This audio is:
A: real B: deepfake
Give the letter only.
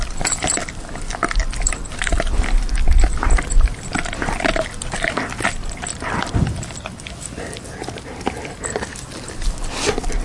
A